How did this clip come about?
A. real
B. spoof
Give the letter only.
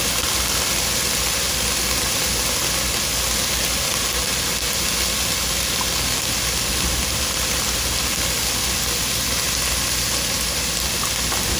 A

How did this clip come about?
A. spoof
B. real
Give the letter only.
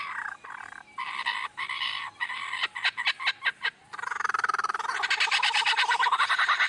B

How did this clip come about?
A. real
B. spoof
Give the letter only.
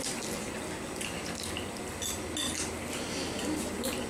A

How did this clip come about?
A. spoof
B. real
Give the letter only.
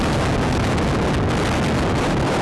B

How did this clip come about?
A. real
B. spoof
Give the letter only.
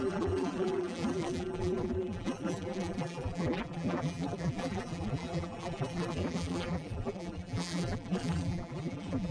B